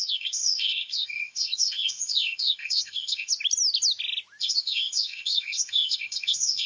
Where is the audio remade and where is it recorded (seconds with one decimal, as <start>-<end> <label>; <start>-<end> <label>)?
0.0-3.3 remade; 3.3-4.4 recorded; 4.4-6.7 remade